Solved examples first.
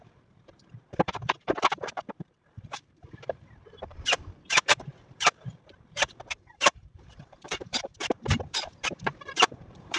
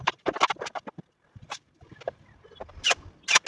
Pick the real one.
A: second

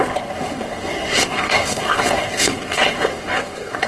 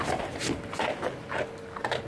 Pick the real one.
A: second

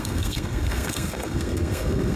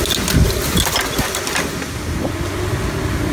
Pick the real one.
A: second